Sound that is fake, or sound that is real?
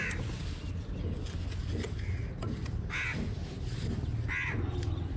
real